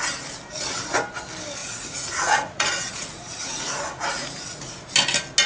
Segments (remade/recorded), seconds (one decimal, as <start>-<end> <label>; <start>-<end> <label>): 0.0-1.6 recorded; 1.6-4.9 remade; 4.9-5.5 recorded